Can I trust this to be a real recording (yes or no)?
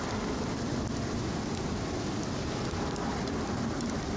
no